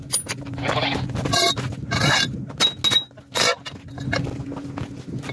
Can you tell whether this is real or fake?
real